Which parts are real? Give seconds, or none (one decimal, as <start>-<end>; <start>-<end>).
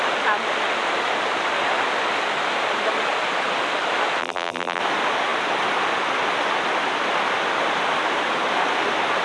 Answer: 0.0-4.2; 4.8-9.2